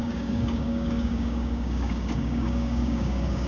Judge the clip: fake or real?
fake